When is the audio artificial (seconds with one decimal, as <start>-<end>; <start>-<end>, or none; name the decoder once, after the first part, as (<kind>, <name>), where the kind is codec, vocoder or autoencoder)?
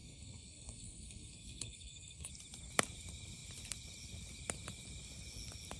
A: 0.0-2.3 (codec, SNAC)